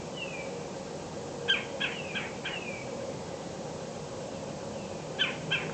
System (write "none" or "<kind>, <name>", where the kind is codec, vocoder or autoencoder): none